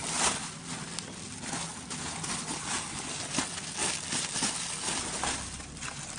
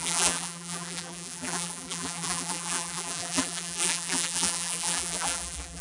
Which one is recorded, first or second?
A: first